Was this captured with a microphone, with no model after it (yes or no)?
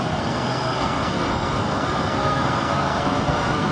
no